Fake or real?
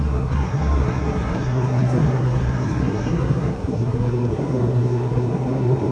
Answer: fake